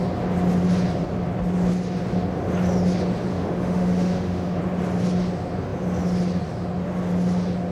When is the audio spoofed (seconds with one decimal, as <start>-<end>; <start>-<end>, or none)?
3.3-4.6